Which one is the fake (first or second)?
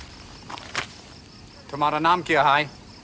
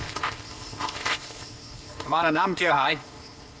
second